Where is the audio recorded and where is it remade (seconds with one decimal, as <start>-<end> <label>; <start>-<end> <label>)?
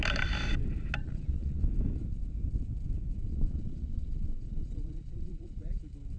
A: 0.0-1.0 recorded; 1.0-1.6 remade; 1.6-3.3 recorded; 3.3-5.8 remade; 5.8-6.2 recorded